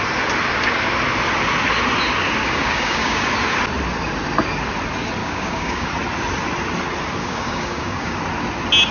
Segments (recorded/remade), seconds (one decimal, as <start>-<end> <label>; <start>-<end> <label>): 0.0-2.4 recorded; 2.4-3.3 remade; 3.3-5.2 recorded; 5.2-5.9 remade; 5.9-7.2 recorded; 7.2-8.2 remade; 8.2-8.9 recorded